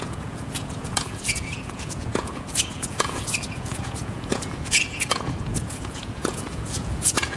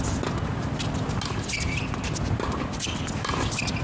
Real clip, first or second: second